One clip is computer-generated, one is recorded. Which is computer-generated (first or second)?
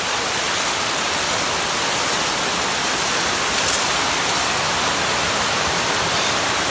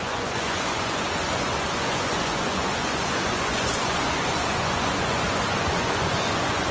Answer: second